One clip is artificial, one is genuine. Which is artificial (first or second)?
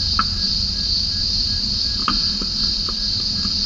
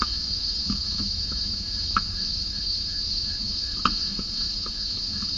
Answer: second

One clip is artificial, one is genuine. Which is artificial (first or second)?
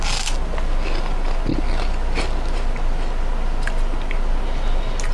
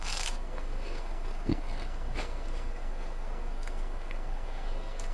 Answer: second